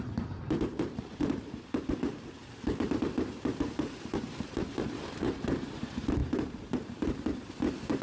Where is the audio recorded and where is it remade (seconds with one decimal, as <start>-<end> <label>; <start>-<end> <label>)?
0.0-8.0 remade